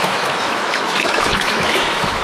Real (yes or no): no